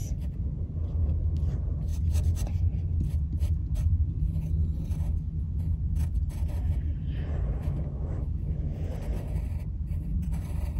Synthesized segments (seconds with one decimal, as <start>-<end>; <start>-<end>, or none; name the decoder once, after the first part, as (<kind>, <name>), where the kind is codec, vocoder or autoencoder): 7.6-8.9 (autoencoder, DAC-VAE)